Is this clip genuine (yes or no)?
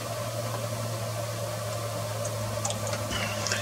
yes